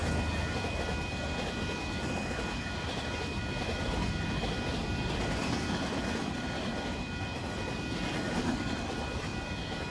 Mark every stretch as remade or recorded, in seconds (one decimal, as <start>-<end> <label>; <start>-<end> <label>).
0.0-9.3 recorded; 9.3-9.9 remade